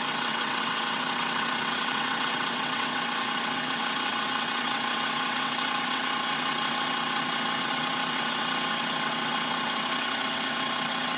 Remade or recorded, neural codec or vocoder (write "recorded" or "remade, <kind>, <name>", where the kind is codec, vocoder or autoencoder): remade, vocoder, WaveNeXt